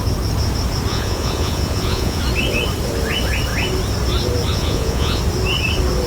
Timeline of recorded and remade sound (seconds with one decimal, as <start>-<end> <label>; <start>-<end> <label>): 0.0-0.9 recorded; 0.9-2.2 remade; 2.2-4.5 recorded; 4.5-5.2 remade; 5.2-6.1 recorded